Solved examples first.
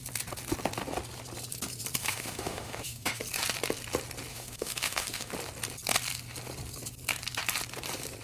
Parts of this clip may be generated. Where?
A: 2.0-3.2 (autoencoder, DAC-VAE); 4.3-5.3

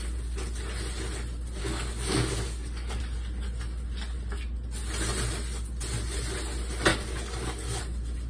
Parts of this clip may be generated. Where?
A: 1.6-3.0 (codec, DAC); 6.9-7.8

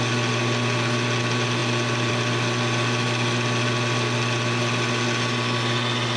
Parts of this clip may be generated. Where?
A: none

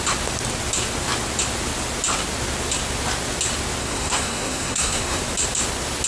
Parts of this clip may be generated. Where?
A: 3.8-5.2 (codec, SNAC)